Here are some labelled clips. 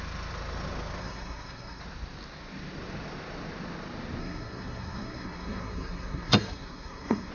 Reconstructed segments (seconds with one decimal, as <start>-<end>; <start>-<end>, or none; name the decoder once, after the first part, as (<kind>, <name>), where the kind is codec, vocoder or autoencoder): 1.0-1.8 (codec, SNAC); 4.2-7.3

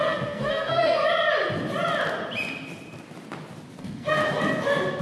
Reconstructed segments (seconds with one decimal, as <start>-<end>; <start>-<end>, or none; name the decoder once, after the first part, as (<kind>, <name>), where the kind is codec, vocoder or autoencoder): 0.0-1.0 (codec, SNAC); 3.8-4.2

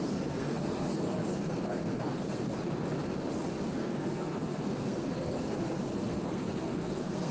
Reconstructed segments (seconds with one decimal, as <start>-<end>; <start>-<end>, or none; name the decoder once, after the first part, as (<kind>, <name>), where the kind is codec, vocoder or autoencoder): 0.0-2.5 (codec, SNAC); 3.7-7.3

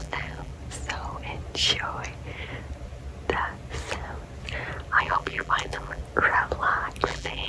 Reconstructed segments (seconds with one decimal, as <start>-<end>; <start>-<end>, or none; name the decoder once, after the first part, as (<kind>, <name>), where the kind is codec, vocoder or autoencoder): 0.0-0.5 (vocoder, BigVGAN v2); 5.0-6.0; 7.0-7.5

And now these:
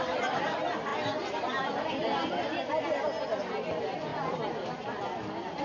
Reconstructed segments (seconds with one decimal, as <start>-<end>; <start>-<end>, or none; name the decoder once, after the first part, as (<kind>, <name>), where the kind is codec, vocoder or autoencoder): none

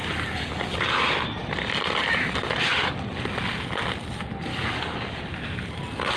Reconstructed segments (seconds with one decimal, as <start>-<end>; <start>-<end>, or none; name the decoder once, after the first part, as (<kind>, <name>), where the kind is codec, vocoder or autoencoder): 0.0-0.8 (codec, DAC); 4.5-5.2

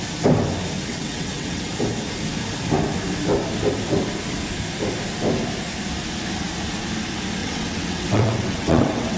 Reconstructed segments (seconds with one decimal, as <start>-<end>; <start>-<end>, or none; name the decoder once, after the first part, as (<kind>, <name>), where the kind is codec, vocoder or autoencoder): 0.9-1.7 (vocoder, WaveNeXt); 7.4-9.2

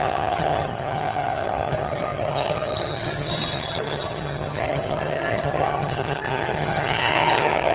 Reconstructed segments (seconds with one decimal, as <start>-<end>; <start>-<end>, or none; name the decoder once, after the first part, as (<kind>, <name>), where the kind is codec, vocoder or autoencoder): 0.0-7.7 (vocoder, HiFi-GAN)